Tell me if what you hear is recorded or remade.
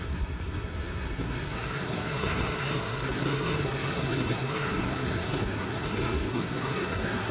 remade